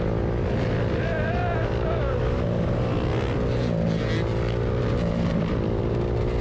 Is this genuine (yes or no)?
yes